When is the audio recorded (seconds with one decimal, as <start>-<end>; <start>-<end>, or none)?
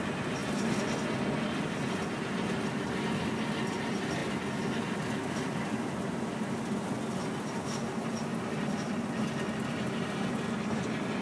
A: 0.0-11.2